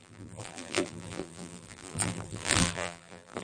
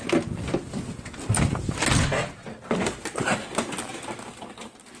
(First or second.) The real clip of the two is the second